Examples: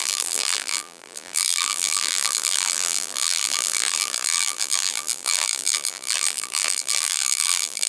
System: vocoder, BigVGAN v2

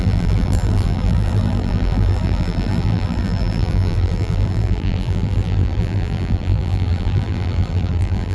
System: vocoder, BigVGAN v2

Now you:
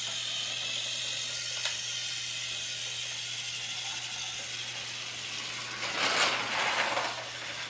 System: none